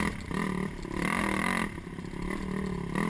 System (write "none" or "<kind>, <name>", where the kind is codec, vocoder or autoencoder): none